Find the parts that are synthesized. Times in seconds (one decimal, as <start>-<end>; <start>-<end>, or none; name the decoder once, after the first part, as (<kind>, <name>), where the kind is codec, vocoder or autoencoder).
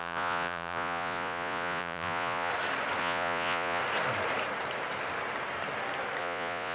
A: 0.0-2.5 (vocoder, Vocos); 3.0-3.8; 6.2-6.7